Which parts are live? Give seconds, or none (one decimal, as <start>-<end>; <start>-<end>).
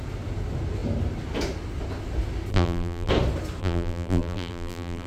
0.0-2.5; 3.1-3.6